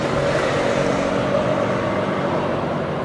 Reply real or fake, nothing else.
real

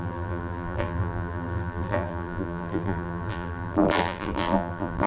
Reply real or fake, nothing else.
fake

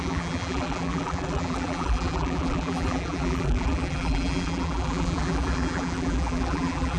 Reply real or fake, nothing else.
fake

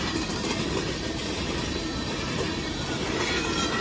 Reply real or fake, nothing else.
real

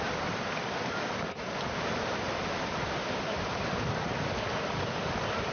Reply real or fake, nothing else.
fake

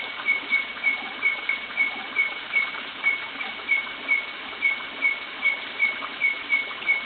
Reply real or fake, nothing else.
real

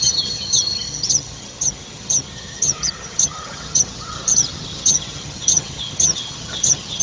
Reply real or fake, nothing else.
fake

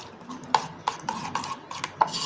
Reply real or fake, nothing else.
real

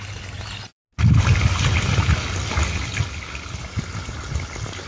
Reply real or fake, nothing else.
real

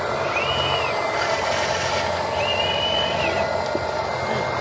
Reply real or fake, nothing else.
real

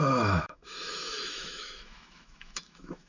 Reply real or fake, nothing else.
fake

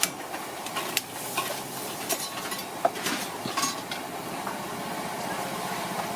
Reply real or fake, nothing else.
real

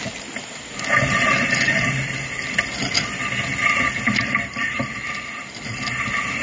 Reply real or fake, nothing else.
real